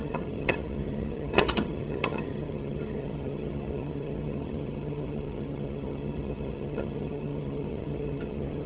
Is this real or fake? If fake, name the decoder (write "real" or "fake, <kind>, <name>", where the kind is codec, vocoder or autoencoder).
fake, vocoder, HiFi-GAN